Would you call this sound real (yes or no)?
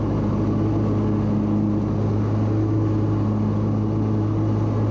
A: yes